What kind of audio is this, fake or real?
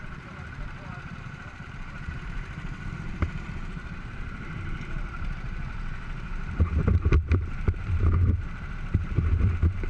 fake